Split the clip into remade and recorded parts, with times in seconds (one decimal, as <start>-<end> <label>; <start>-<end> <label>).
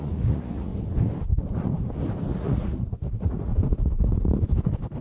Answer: 0.0-0.7 remade; 0.7-2.3 recorded; 2.3-3.5 remade; 3.5-5.0 recorded